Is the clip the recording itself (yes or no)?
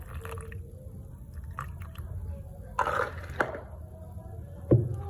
yes